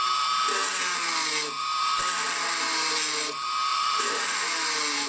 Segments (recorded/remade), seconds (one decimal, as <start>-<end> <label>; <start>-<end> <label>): 0.0-3.7 recorded; 3.7-4.5 remade; 4.5-5.1 recorded